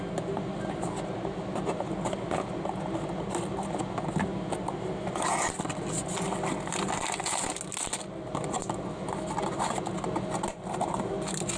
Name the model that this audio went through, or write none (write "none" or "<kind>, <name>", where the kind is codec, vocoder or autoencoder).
none